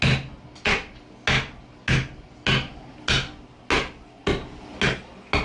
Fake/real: real